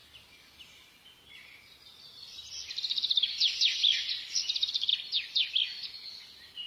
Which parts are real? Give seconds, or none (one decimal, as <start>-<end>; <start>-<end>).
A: 0.0-6.7